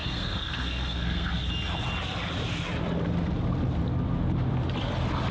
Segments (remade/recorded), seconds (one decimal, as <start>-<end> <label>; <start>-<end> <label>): 0.0-1.5 remade; 1.5-5.3 recorded